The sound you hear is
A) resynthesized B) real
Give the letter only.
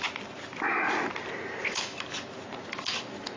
B